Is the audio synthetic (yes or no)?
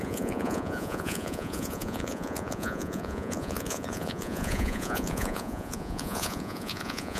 yes